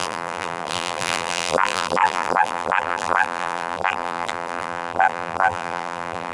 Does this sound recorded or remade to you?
remade